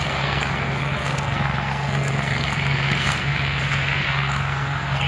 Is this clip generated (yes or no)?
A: yes